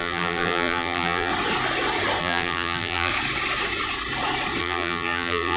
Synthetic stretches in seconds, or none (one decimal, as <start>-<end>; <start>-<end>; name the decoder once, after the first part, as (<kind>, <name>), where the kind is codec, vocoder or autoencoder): 0.0-1.3 (vocoder, BigVGAN v2); 2.2-3.1; 4.6-5.6